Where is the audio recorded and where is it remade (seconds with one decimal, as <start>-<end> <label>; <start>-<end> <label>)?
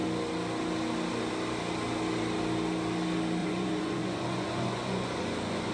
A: 0.0-3.4 recorded; 3.4-5.7 remade